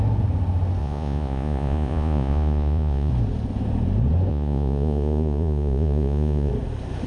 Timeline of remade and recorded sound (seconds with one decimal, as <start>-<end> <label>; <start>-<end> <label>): 0.0-0.8 recorded; 0.8-3.1 remade; 3.1-4.3 recorded; 4.3-6.5 remade; 6.5-7.1 recorded